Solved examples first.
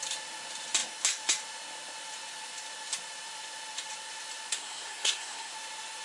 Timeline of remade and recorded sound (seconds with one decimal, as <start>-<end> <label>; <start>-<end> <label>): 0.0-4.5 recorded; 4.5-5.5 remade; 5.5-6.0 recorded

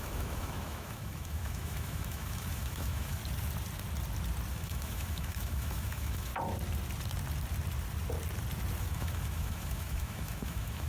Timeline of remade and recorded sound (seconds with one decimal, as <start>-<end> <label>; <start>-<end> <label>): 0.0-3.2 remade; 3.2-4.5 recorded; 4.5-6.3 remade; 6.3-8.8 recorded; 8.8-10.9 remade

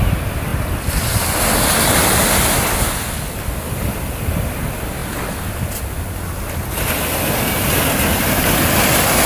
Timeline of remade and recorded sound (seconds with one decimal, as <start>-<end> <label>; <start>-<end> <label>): 0.0-9.3 recorded

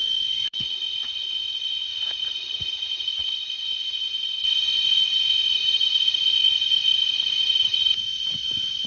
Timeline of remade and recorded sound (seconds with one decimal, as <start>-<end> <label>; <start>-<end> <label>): 0.0-1.9 remade; 1.9-3.1 recorded; 3.1-5.5 remade; 5.5-8.0 recorded; 8.0-8.9 remade

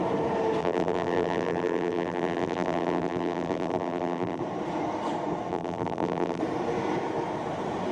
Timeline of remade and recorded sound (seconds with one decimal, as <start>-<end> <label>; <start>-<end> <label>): 0.0-0.6 recorded; 0.6-4.4 remade; 4.4-5.5 recorded; 5.5-6.4 remade; 6.4-7.9 recorded